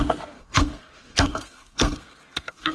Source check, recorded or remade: remade